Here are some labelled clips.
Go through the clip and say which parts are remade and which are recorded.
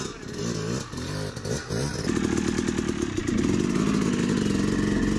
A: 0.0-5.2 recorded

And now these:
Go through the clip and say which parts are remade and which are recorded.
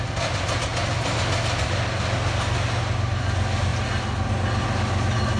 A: 0.0-5.4 recorded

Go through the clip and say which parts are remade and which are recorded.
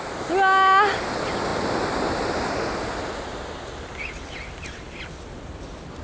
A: 0.0-6.0 recorded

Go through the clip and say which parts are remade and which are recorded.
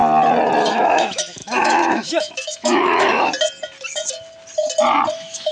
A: 0.0-0.7 recorded; 0.7-3.3 remade; 3.3-5.1 recorded; 5.1-5.5 remade